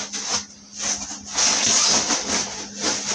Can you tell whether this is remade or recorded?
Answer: recorded